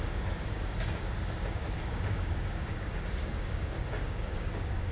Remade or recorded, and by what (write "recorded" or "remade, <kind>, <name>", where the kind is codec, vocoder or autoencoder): remade, codec, DAC